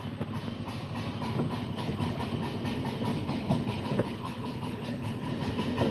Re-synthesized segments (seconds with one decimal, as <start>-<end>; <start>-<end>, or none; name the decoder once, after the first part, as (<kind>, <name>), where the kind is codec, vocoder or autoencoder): 1.6-2.2 (codec, HILCodec); 3.1-5.5